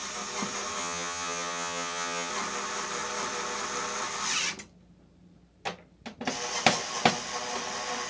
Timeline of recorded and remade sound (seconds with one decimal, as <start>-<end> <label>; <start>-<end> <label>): 0.0-0.8 recorded; 0.8-2.3 remade; 2.3-8.1 recorded